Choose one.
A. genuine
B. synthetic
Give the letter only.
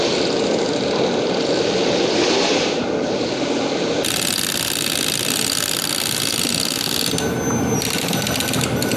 A